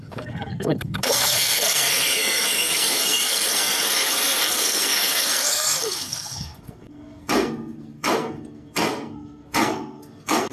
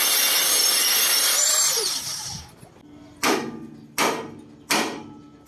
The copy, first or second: first